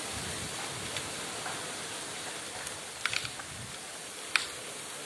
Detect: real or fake real